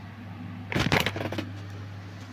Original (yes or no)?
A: yes